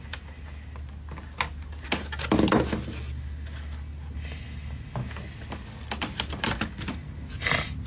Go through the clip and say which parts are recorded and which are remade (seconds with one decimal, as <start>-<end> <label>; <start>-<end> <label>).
0.0-7.9 recorded